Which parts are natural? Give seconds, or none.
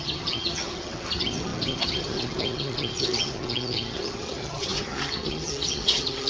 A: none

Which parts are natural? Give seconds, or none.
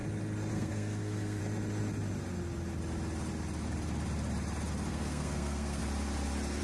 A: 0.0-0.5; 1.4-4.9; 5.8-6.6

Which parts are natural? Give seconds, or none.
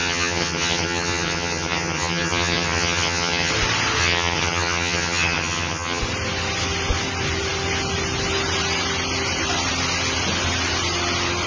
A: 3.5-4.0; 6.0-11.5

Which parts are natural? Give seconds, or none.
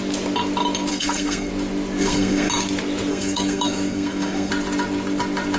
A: 0.0-0.9; 1.5-2.0; 2.5-3.1; 4.5-5.6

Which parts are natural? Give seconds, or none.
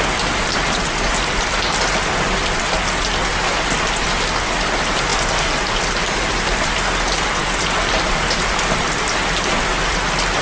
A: 0.0-10.4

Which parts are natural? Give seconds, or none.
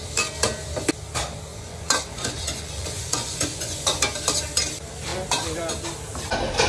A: 0.0-1.5; 4.0-6.7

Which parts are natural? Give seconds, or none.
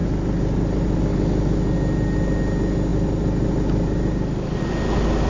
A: 1.0-2.9; 4.6-5.3